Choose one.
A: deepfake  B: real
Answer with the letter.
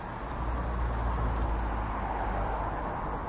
B